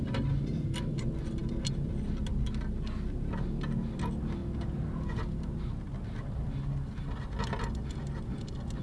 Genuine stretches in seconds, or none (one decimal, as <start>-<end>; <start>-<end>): 0.0-8.8